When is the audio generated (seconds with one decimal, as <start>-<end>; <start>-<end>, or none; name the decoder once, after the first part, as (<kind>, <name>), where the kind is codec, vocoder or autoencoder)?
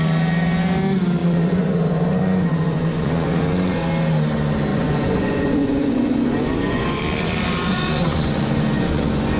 1.2-3.4 (vocoder, Vocos); 4.7-7.0; 7.7-9.4